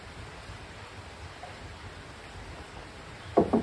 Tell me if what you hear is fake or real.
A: real